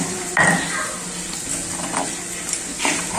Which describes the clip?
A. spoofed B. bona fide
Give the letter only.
B